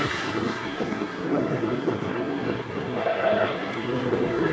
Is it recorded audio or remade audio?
remade